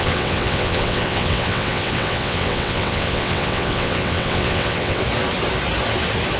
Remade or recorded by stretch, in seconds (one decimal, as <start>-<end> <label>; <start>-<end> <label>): 0.0-5.0 remade; 5.0-6.4 recorded